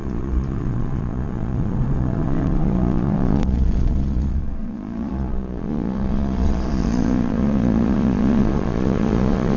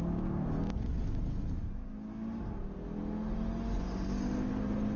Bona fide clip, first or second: second